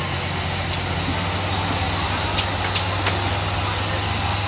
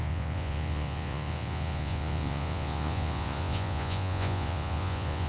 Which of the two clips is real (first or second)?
first